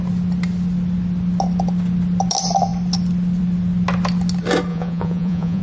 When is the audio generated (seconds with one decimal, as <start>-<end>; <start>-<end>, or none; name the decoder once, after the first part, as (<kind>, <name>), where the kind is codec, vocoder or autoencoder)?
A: 4.7-5.6 (vocoder, Vocos)